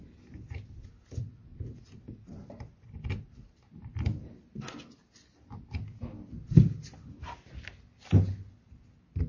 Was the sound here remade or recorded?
recorded